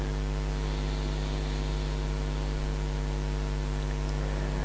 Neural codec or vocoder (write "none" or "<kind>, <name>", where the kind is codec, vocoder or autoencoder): none